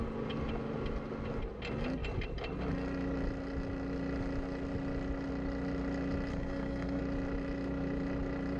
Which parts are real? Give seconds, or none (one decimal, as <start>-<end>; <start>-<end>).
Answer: 0.0-6.3; 7.0-8.6